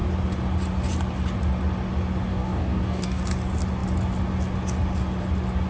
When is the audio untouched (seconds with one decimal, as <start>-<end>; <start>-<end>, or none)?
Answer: 0.0-2.3; 3.2-5.7